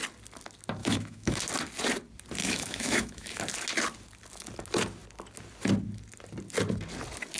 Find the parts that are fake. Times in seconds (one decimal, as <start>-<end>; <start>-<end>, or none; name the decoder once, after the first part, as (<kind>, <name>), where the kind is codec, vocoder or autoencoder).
0.8-1.4 (autoencoder, DAC-VAE); 2.4-3.4